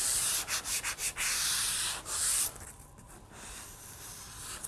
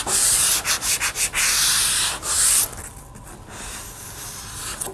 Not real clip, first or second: first